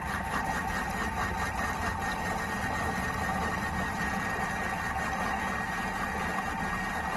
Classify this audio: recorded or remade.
recorded